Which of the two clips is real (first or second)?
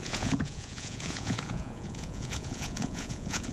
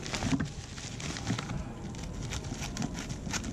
second